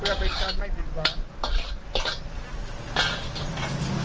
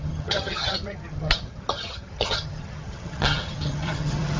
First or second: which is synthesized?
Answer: second